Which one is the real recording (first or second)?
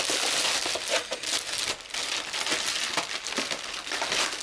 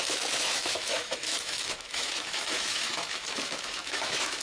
first